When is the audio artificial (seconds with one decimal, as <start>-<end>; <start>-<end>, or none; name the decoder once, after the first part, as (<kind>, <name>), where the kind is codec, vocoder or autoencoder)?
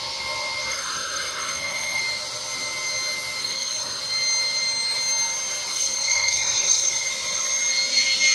0.7-2.0 (codec, SNAC); 3.4-4.0; 5.7-7.1